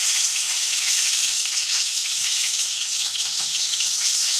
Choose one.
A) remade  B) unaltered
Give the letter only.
A